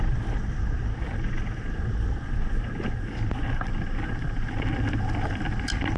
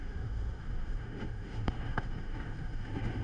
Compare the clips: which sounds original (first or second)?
first